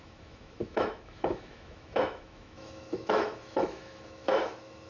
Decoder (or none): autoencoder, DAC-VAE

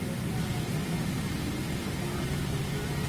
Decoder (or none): none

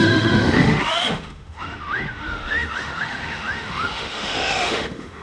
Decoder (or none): autoencoder, DAC-VAE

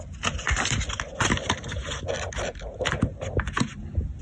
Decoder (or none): none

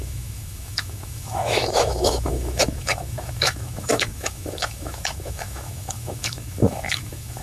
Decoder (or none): autoencoder, DAC-VAE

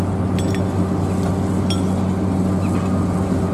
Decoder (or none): none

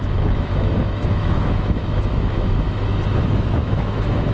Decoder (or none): autoencoder, DAC-VAE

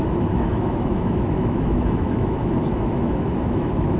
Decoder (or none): autoencoder, DAC-VAE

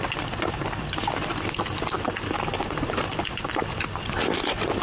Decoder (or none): none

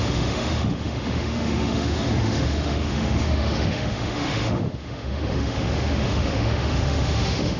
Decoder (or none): autoencoder, DAC-VAE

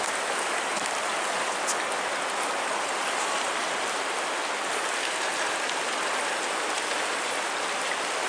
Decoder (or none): none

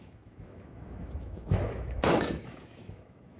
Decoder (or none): autoencoder, DAC-VAE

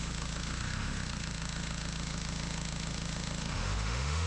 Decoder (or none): autoencoder, DAC-VAE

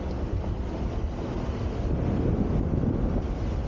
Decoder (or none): none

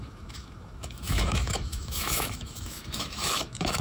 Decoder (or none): autoencoder, DAC-VAE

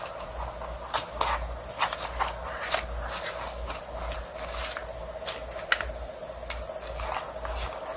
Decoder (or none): none